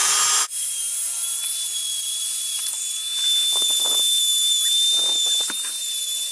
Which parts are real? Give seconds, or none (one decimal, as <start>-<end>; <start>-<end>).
0.0-6.3